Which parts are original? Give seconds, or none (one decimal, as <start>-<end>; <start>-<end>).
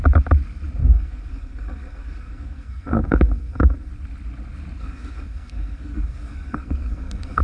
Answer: 0.0-0.8; 3.9-4.8